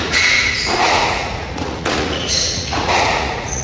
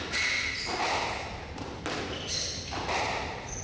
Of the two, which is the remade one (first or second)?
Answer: first